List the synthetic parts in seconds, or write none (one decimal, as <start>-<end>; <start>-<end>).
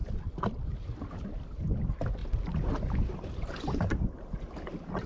1.0-2.2; 3.3-5.1